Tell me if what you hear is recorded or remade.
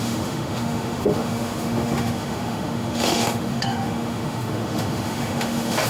remade